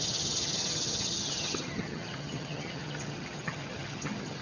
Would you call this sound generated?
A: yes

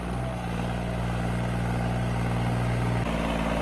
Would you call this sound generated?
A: no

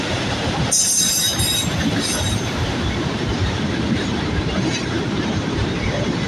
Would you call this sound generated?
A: yes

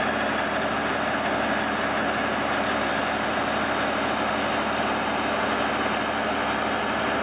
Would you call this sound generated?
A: no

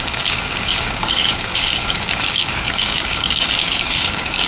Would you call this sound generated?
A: yes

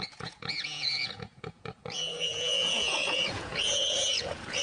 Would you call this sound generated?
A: yes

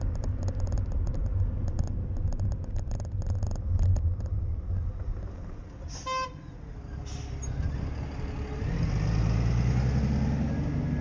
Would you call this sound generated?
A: no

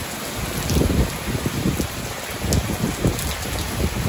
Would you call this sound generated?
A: no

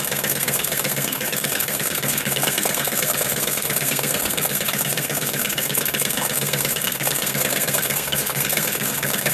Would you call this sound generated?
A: yes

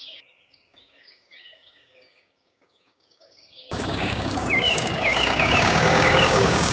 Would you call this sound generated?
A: yes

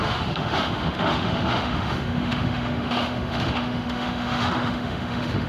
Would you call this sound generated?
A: yes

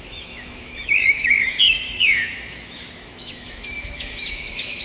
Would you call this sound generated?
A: yes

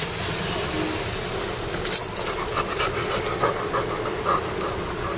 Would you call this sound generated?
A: no